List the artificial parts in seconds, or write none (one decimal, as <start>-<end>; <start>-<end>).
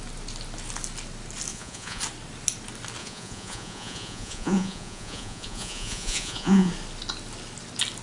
1.5-2.0; 3.0-6.7